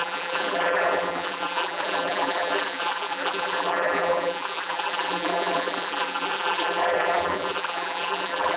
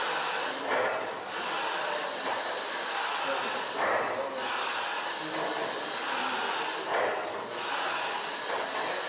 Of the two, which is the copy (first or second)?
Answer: first